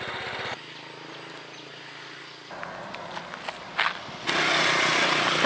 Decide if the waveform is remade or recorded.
recorded